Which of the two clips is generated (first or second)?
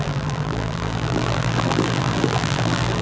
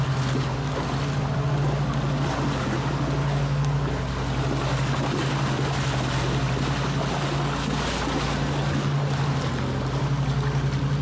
first